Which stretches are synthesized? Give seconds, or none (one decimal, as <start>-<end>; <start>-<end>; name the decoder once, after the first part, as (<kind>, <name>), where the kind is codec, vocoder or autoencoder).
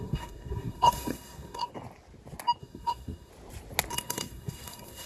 0.0-1.7 (codec, SNAC); 2.6-3.3; 3.9-5.1